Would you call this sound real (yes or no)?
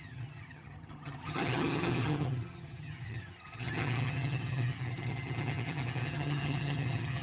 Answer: no